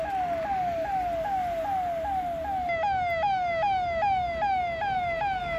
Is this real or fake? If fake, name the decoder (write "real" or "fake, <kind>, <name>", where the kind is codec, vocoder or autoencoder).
real